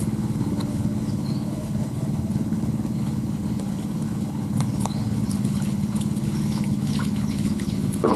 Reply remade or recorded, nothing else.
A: remade